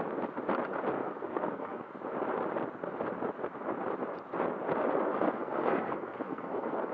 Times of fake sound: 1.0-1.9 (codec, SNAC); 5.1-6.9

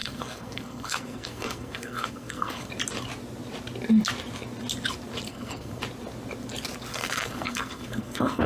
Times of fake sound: 0.0-2.7 (codec, SNAC); 5.3-5.8; 6.9-8.5

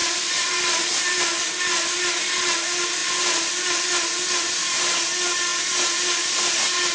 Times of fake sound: 0.0-0.5 (vocoder, BigVGAN v2)

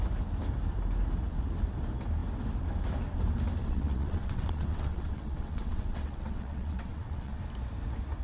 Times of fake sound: 3.6-7.4 (vocoder, WaveNeXt)

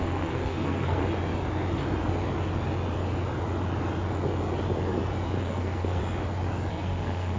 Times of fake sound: 0.0-1.0 (codec, SNAC); 5.4-6.0; 6.7-7.4

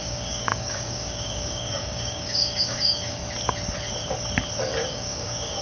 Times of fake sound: 0.0-3.2 (codec, DAC); 4.9-5.6

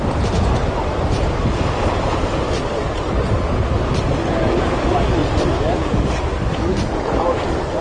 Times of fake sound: none

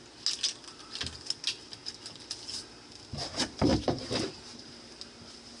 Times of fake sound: 3.7-4.7 (vocoder, BigVGAN v2)